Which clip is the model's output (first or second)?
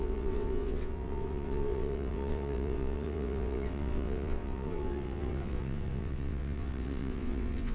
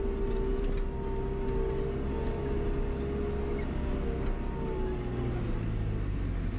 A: first